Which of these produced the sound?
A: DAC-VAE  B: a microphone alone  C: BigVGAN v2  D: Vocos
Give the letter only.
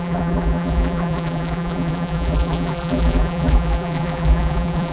C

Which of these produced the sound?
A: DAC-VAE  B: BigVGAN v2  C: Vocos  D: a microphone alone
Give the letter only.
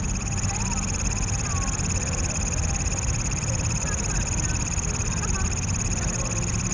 D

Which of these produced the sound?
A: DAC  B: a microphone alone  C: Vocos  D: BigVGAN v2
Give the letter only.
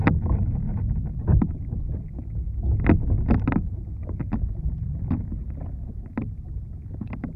B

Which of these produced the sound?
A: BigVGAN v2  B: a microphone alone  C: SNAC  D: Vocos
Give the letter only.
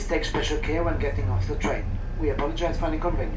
B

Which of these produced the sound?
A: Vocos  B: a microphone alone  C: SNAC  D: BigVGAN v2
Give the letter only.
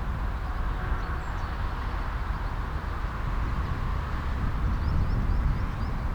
B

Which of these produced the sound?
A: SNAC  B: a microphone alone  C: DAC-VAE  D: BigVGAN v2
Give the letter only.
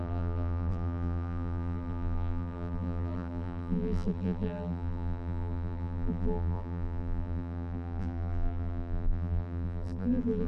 D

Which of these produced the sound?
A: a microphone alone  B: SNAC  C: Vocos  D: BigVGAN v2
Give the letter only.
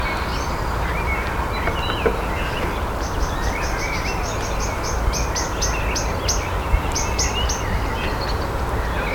A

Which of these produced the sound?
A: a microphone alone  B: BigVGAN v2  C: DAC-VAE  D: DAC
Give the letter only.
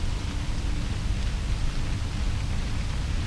A